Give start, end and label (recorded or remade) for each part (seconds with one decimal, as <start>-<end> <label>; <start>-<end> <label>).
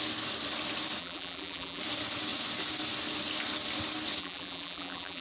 0.0-1.0 recorded; 1.0-1.8 remade; 1.8-4.2 recorded; 4.2-5.2 remade